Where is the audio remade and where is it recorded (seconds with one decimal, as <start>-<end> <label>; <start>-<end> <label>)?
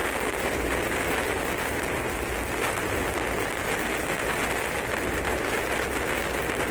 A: 0.0-6.7 recorded